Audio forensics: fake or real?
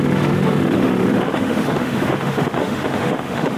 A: fake